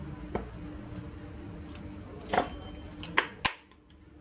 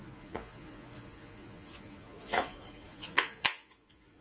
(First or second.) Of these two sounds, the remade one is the second